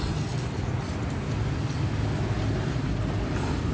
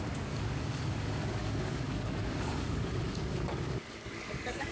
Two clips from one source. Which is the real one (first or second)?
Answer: first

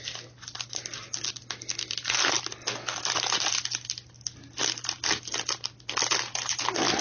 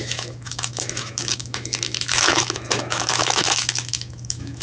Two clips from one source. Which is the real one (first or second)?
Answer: first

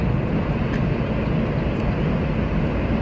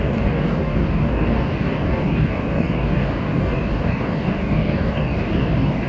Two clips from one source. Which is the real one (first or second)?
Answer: first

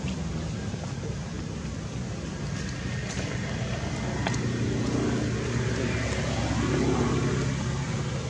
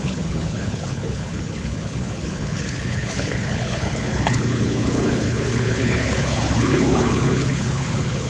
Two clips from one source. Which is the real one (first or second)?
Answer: first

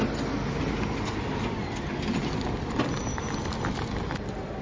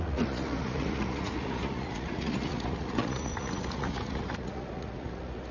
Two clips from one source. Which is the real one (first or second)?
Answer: first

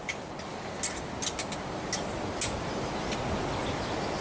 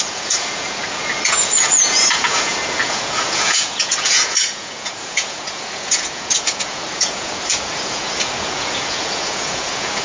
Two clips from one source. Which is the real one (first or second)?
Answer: first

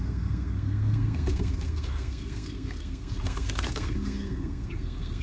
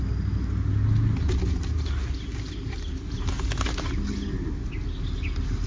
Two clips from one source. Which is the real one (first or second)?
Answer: second